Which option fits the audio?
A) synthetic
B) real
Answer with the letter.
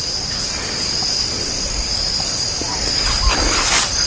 B